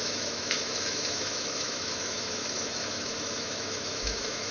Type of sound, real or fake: fake